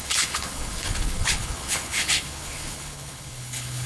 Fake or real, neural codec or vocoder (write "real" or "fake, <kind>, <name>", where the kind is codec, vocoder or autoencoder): fake, codec, HILCodec